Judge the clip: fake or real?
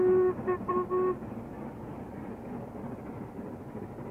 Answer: real